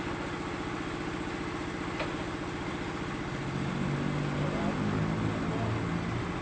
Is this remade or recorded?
recorded